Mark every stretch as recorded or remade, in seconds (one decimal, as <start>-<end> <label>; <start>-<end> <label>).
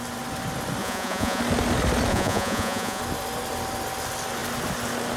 0.0-0.8 recorded; 0.8-1.4 remade; 1.4-2.1 recorded; 2.1-3.0 remade; 3.0-5.2 recorded